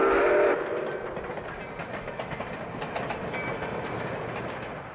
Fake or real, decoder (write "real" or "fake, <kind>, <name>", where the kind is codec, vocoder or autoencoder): real